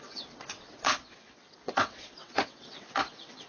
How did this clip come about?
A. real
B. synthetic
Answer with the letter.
B